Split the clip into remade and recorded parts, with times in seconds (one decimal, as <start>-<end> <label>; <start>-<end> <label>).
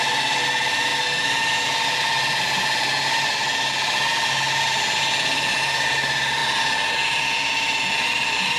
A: 0.0-8.6 recorded